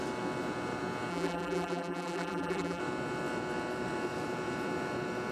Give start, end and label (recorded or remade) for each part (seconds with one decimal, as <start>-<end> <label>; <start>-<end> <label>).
0.0-1.1 recorded; 1.1-2.8 remade; 2.8-5.3 recorded